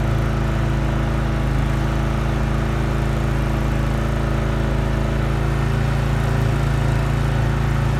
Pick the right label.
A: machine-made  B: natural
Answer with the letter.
B